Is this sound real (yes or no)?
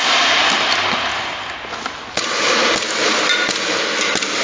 yes